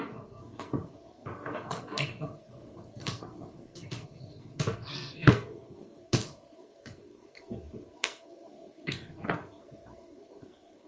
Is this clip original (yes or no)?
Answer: no